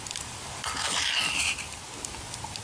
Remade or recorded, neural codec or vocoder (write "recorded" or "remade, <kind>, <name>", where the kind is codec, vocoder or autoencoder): recorded